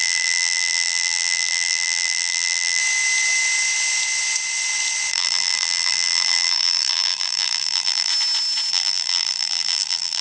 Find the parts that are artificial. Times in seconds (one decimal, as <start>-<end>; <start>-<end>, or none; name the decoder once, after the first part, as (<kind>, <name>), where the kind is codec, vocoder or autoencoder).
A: 0.0-2.8 (vocoder, BigVGAN v2); 5.1-8.1; 8.7-10.2